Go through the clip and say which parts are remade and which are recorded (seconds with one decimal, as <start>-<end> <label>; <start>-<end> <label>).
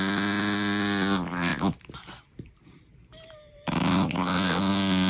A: 0.0-5.1 recorded